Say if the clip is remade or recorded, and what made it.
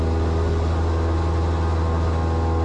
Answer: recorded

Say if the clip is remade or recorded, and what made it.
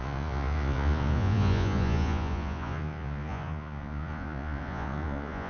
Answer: remade, vocoder, Vocos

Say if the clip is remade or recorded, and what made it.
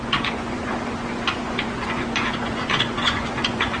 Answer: remade, vocoder, Vocos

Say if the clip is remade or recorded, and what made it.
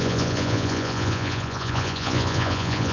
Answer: remade, vocoder, Vocos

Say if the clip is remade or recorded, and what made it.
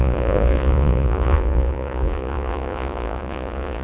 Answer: remade, vocoder, Vocos